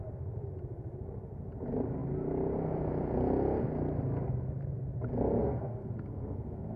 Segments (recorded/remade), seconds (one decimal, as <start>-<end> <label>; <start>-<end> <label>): 0.0-5.4 recorded; 5.4-6.8 remade